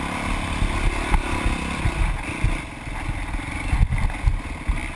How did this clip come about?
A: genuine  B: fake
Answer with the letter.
A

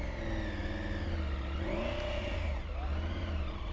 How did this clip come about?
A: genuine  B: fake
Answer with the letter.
A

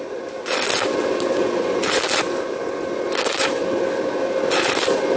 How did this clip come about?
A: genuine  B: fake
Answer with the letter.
A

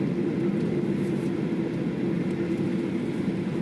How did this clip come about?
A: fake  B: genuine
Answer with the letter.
B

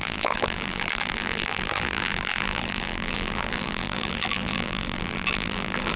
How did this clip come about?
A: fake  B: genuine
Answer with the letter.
A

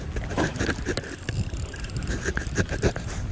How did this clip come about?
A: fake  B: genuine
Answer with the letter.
B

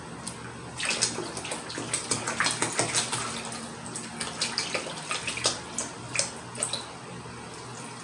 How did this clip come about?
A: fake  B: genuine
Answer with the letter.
B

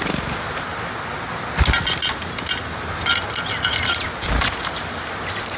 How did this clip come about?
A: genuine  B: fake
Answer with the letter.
A